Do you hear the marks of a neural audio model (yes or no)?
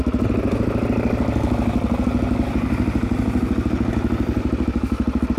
no